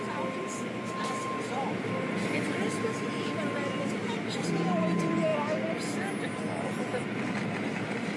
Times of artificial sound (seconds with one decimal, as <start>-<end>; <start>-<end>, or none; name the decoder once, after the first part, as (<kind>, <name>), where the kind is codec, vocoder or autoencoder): none